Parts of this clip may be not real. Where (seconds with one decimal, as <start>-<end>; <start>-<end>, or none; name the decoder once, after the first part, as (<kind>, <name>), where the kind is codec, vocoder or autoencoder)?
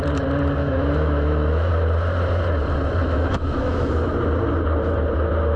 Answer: 0.6-1.7 (autoencoder, DAC-VAE); 3.0-4.1